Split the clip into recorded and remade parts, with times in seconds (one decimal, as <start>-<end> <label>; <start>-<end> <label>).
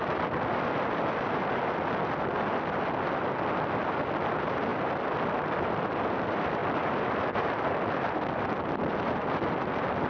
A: 0.0-4.7 recorded; 4.7-6.0 remade; 6.0-6.6 recorded; 6.6-8.1 remade; 8.1-10.1 recorded